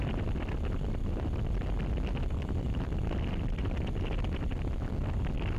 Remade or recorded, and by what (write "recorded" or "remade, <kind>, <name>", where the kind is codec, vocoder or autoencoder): remade, vocoder, BigVGAN v2